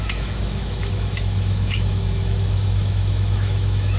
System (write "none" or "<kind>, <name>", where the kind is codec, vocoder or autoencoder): autoencoder, DAC-VAE